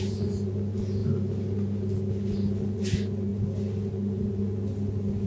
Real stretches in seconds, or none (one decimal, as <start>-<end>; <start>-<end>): 0.0-5.3